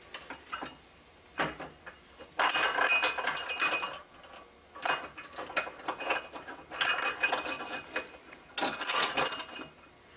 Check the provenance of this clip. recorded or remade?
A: recorded